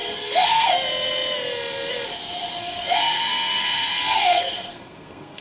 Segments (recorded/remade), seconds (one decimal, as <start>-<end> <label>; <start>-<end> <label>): 0.0-0.7 remade; 0.7-2.6 recorded; 2.6-5.4 remade